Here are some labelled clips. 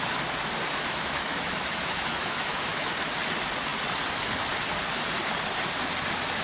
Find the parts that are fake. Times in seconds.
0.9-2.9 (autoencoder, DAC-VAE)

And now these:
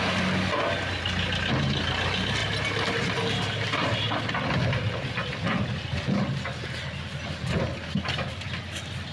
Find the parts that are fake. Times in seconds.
none

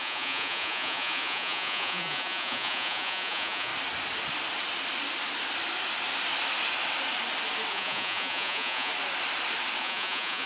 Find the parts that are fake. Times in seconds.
0.0-3.7 (vocoder, Vocos); 7.7-8.9; 9.8-10.5

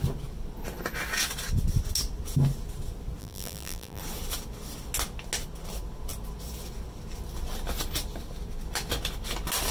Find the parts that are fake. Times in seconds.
3.2-4.0 (vocoder, BigVGAN v2)